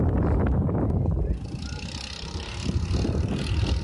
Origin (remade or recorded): recorded